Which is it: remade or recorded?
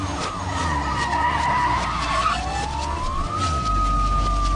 recorded